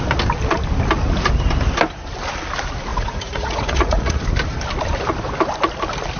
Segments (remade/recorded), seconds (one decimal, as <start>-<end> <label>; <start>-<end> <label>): 0.0-2.9 recorded; 2.9-4.2 remade; 4.2-6.2 recorded